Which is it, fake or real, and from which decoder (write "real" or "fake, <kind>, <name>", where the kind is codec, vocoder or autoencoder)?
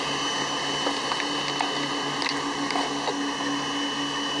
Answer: real